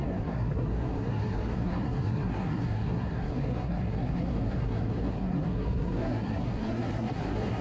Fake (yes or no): yes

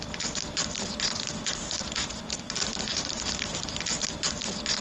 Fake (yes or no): no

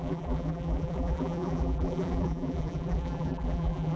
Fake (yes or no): yes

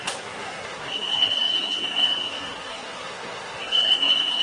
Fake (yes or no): yes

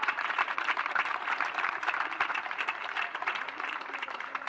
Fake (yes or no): yes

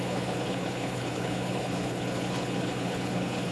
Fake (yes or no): yes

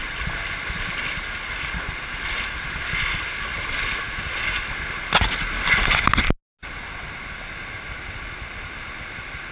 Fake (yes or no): no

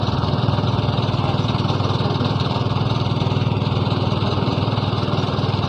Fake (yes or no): yes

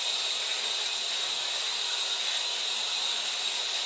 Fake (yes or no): no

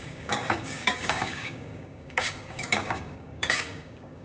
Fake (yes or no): yes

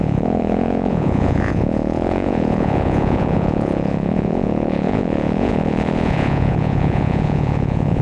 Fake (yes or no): yes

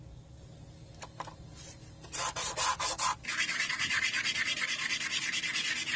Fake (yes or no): no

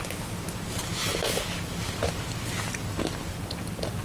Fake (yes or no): no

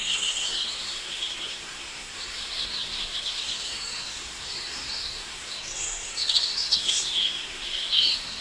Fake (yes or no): yes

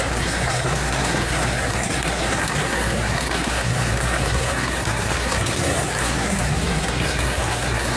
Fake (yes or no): yes